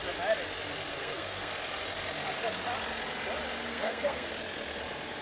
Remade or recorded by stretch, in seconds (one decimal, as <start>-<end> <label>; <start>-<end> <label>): 0.0-0.9 recorded; 0.9-1.5 remade; 1.5-3.7 recorded; 3.7-4.3 remade; 4.3-5.2 recorded

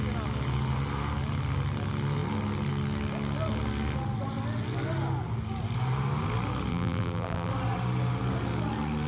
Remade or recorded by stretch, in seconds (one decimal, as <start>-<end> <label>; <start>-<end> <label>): 0.0-6.7 recorded; 6.7-7.5 remade; 7.5-9.1 recorded

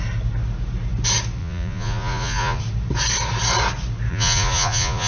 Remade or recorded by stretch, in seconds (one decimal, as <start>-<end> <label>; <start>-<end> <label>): 0.0-1.4 recorded; 1.4-2.6 remade; 2.6-4.1 recorded; 4.1-5.1 remade

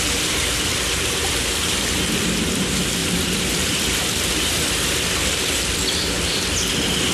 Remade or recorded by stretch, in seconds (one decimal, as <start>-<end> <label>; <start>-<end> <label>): 0.0-3.0 recorded; 3.0-7.1 remade